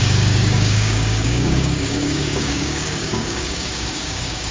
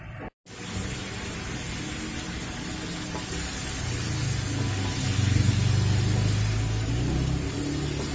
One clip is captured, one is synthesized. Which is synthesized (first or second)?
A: first